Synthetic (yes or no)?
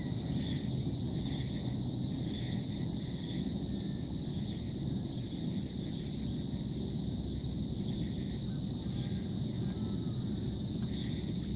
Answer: no